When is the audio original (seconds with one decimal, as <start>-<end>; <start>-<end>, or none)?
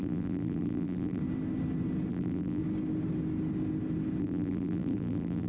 1.2-2.1; 2.6-4.2